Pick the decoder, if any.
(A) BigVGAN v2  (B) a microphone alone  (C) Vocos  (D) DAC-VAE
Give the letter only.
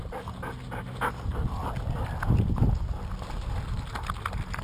B